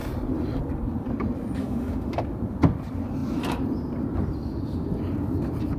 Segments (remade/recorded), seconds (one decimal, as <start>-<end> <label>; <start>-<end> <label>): 0.0-1.6 recorded; 1.6-2.2 remade; 2.2-5.8 recorded

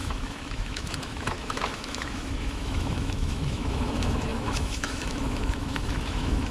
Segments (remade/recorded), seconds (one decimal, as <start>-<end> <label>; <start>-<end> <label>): 0.0-6.5 remade

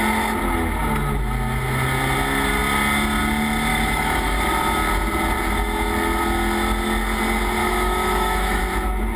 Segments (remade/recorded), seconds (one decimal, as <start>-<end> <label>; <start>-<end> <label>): 0.0-3.7 recorded; 3.7-4.4 remade; 4.4-7.6 recorded; 7.6-8.6 remade; 8.6-9.2 recorded